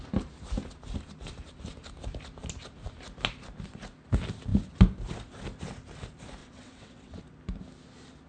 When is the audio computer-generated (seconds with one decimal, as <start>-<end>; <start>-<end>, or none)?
6.4-7.2